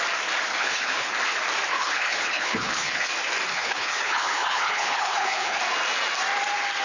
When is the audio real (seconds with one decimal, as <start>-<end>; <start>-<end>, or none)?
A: 0.0-0.5; 1.1-1.7; 3.1-3.5; 5.6-6.8